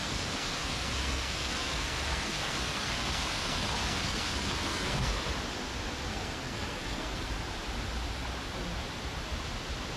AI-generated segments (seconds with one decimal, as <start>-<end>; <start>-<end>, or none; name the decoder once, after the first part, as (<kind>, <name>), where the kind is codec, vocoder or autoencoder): 0.0-5.2 (codec, SNAC); 6.1-7.3